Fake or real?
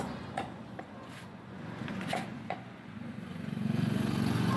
fake